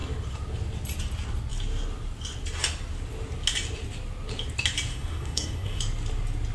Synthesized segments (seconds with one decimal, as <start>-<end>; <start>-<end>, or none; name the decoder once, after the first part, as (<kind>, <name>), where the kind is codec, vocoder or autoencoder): 4.9-5.8 (codec, SNAC)